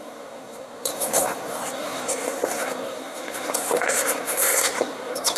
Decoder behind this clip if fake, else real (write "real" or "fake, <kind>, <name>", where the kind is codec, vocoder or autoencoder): fake, codec, SNAC